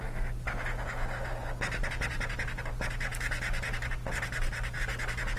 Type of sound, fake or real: real